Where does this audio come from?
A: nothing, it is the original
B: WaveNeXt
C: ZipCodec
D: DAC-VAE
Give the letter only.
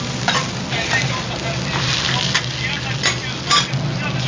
A